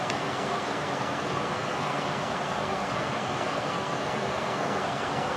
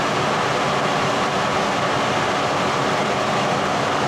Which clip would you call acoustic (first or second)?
second